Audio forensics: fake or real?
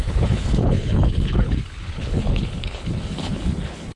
fake